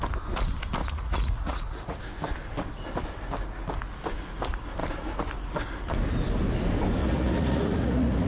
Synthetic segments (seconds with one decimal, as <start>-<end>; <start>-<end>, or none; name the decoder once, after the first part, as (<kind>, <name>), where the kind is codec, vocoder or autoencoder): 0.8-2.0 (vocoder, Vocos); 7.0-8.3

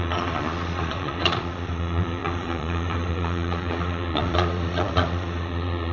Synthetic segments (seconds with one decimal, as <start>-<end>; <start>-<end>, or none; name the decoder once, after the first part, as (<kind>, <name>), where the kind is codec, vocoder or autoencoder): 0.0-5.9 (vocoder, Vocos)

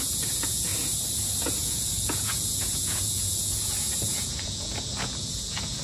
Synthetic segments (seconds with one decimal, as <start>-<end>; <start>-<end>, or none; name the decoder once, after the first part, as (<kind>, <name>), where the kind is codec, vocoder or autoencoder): 0.0-0.7 (vocoder, Vocos); 1.4-5.8